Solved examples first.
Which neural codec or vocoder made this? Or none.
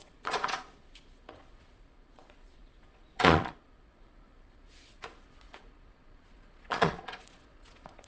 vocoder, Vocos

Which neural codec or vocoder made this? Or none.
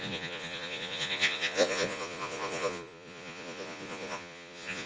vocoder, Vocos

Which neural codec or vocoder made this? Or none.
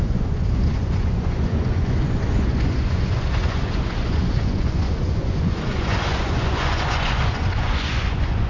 vocoder, Vocos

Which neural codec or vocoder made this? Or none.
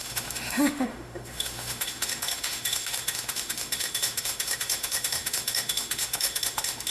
autoencoder, DAC-VAE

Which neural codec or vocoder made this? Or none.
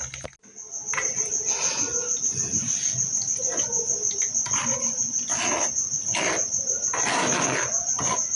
none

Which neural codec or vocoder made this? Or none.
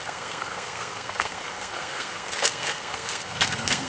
codec, SNAC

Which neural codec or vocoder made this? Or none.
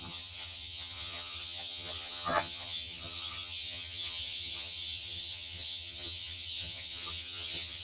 vocoder, HiFi-GAN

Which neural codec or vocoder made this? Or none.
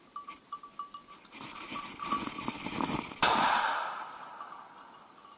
none